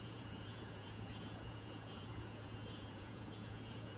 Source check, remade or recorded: remade